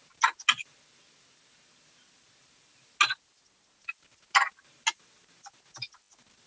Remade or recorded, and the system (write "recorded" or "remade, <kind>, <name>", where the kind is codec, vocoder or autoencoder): recorded